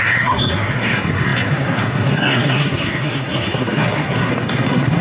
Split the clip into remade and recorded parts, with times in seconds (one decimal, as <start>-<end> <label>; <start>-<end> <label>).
0.0-5.0 remade